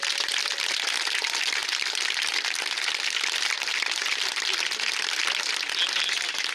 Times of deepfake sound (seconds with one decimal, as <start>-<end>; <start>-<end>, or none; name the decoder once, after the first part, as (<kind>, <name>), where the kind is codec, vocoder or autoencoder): none